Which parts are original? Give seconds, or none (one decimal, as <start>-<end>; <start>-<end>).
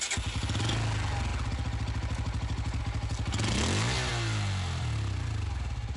0.0-6.0